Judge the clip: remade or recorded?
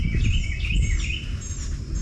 recorded